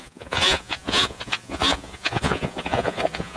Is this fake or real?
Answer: fake